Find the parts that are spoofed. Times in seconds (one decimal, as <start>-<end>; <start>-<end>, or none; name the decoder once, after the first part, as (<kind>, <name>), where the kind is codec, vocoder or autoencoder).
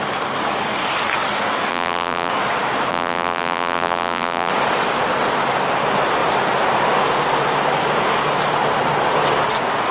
1.7-2.3 (vocoder, BigVGAN v2); 2.9-4.5